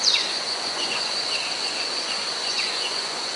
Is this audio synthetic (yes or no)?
yes